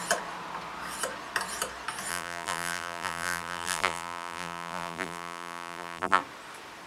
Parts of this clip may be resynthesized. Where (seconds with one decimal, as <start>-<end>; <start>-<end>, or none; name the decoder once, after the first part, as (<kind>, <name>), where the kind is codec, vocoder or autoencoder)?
2.1-6.2 (vocoder, BigVGAN v2)